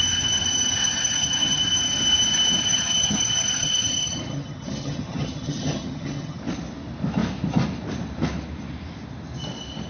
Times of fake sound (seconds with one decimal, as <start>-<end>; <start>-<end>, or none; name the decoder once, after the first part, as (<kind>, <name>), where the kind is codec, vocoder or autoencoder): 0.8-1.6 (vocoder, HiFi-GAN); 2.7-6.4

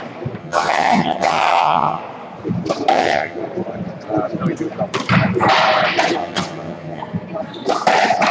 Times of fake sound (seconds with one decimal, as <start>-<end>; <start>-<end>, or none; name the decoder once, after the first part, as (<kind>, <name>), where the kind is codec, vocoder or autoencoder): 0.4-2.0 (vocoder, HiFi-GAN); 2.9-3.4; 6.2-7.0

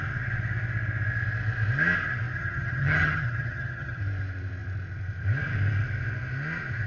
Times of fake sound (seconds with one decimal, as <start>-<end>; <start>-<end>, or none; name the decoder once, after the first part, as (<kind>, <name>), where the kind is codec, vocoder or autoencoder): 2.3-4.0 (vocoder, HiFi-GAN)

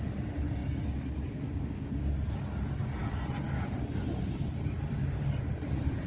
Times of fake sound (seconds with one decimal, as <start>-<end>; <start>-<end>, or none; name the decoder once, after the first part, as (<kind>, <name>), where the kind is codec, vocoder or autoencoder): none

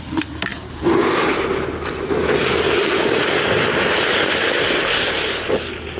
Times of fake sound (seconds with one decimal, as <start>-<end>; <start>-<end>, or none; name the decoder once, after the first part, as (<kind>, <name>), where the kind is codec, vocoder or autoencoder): none